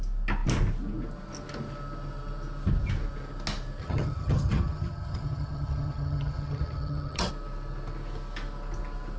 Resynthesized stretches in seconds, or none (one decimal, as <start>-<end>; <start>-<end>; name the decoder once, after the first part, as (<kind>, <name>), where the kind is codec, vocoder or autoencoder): 3.8-7.3 (vocoder, HiFi-GAN)